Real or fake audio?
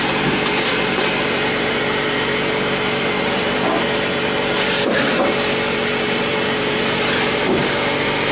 fake